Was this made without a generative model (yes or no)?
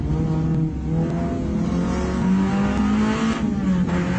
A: yes